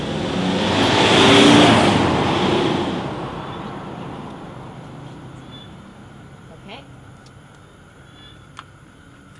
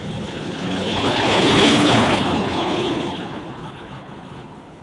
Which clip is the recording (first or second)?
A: first